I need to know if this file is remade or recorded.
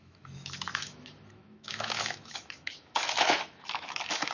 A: remade